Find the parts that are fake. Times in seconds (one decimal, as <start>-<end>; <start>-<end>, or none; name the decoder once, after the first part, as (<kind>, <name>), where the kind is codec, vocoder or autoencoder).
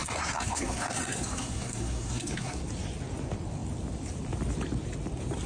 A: 0.0-2.6 (codec, SNAC)